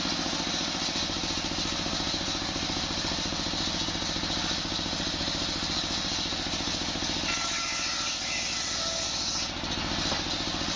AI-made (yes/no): no